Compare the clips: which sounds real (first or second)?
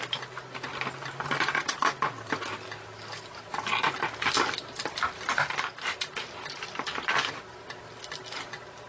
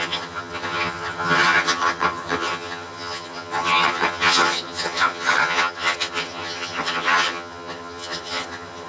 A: first